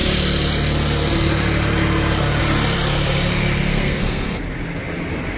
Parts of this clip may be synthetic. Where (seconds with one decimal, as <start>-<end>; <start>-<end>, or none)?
3.7-4.4

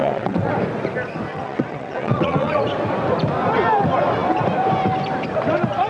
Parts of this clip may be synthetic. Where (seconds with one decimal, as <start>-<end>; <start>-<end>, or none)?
0.0-0.5; 1.3-2.6

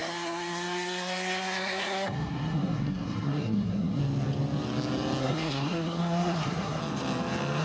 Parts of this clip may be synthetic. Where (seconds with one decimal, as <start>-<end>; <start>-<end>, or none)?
0.0-4.0; 5.2-6.8

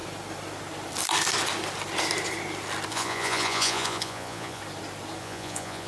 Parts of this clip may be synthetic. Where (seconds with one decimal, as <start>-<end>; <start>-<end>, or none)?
2.9-4.6; 5.2-5.9

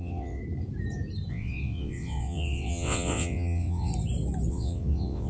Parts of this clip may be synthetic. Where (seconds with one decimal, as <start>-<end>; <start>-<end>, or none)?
0.0-0.4; 1.3-3.9; 4.5-5.3

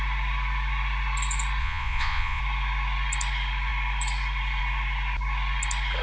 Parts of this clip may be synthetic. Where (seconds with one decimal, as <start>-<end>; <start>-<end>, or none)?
1.6-2.4